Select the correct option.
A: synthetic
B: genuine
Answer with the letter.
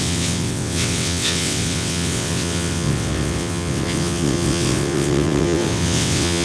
A